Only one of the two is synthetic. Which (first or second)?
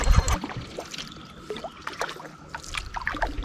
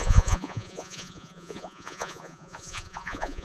second